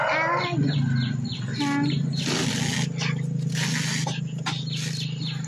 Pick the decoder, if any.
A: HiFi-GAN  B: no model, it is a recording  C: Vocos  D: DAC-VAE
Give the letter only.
B